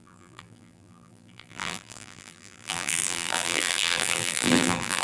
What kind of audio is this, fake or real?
fake